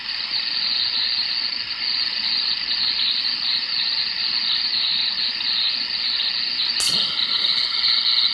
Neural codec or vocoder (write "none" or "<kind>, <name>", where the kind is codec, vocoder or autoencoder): none